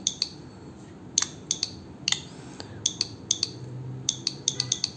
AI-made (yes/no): no